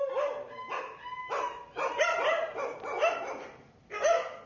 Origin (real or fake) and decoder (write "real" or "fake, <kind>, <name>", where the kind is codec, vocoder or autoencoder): real